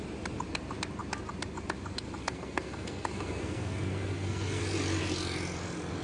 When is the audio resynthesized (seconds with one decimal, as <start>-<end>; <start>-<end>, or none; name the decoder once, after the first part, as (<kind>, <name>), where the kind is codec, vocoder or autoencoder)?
2.2-4.6 (codec, SNAC)